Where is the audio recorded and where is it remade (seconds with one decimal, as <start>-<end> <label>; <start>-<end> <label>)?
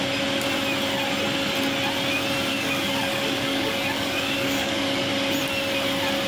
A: 0.0-2.5 recorded; 2.5-5.1 remade; 5.1-6.3 recorded